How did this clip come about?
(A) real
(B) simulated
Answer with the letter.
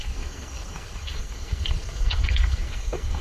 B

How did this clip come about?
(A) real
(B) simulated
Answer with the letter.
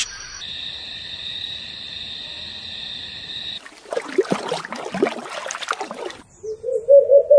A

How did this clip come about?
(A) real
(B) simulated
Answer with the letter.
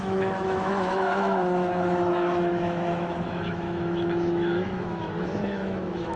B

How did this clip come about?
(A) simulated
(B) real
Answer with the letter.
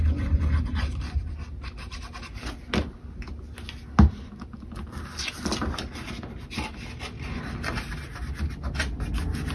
B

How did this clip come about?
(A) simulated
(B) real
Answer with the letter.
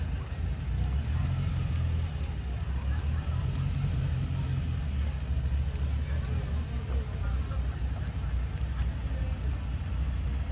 B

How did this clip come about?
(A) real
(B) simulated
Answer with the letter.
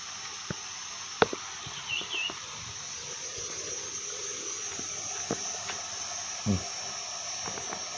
B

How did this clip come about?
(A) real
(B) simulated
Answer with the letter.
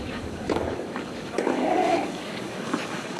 B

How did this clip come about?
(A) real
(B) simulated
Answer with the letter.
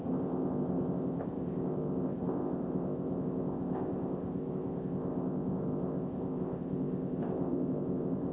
B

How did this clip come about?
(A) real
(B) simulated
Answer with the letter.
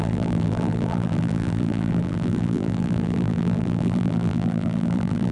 B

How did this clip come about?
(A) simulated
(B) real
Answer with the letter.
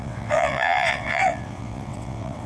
A